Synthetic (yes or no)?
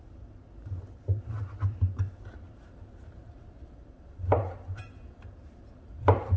yes